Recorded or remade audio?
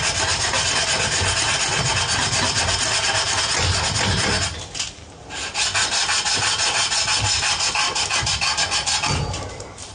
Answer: recorded